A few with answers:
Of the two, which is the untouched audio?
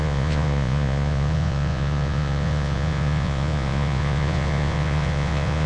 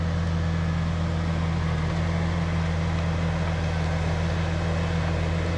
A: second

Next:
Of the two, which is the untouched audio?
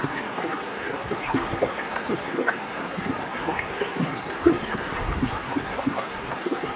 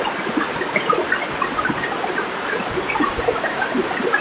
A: second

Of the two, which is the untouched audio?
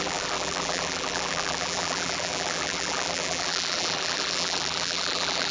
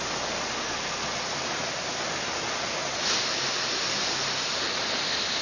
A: second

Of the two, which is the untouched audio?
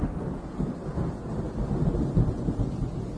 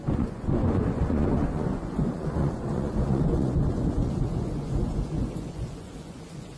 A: first